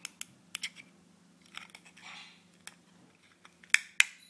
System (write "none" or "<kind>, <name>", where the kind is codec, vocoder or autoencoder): none